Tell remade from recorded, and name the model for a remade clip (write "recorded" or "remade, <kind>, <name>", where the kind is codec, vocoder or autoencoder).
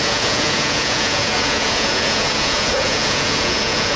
remade, vocoder, Vocos